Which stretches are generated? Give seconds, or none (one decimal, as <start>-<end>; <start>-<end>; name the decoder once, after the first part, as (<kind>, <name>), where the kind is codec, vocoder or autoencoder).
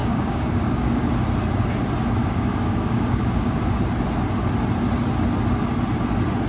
0.0-1.1 (codec, DAC); 2.2-3.6